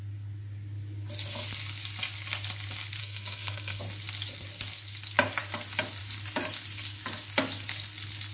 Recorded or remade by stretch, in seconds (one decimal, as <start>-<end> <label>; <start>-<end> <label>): 0.0-3.0 recorded; 3.0-3.8 remade; 3.8-8.3 recorded